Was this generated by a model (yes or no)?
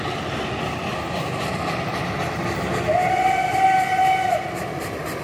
no